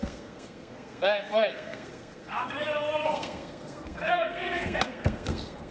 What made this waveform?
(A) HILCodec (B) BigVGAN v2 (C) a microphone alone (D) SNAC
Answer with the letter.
D